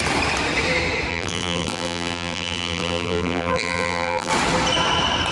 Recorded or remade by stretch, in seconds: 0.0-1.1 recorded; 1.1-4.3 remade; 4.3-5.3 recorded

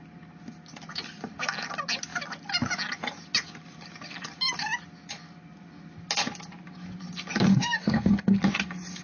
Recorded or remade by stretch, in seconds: 0.0-7.5 recorded; 7.5-8.4 remade; 8.4-9.0 recorded